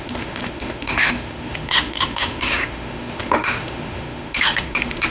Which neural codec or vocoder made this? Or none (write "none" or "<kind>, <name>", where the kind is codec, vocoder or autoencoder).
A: autoencoder, DAC-VAE